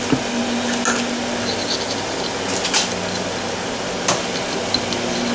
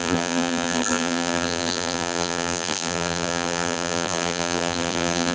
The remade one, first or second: second